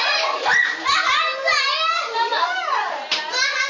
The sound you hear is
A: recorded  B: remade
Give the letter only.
A